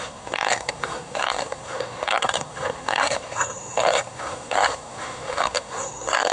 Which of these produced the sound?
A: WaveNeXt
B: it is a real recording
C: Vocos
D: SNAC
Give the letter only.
D